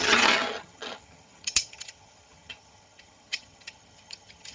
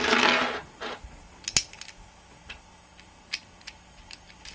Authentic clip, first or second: second